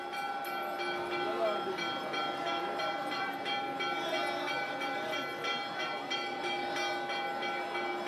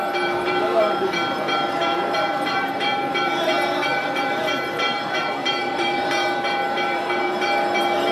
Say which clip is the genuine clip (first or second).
first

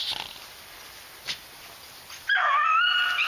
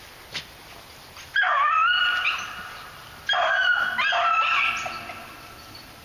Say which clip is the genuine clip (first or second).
first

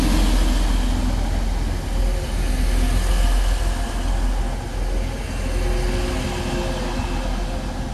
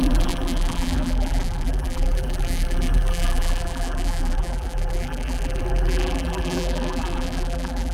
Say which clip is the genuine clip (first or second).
first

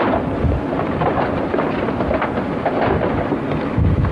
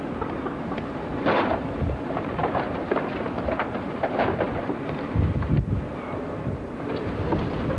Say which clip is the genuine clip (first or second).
first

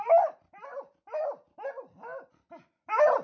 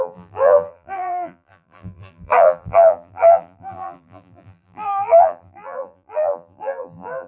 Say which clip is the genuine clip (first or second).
first